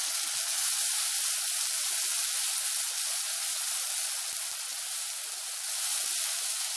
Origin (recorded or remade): recorded